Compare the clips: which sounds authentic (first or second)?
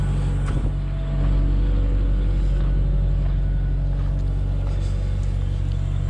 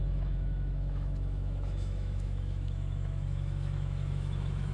first